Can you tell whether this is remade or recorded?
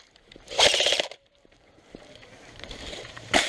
remade